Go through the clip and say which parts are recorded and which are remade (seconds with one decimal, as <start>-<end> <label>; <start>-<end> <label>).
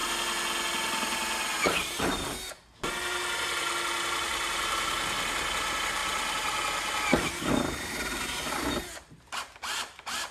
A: 0.0-10.3 recorded